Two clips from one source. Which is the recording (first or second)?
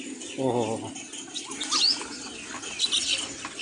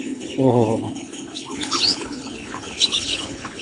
first